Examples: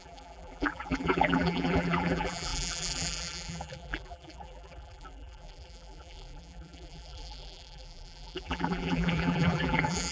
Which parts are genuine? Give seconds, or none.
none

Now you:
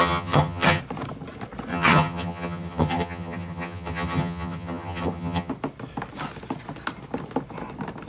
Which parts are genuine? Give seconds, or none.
0.8-1.7; 5.5-8.1

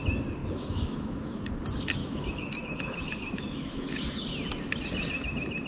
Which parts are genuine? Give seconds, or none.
0.0-0.4; 1.5-2.0; 4.0-5.7